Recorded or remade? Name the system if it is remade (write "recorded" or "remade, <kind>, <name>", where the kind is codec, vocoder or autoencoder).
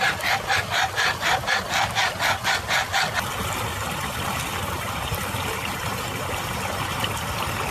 recorded